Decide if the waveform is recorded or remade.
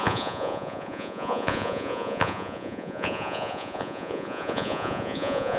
remade